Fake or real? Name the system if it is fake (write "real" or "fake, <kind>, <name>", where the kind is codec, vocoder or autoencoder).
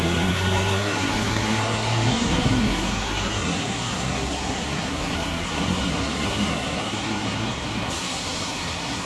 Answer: fake, codec, SNAC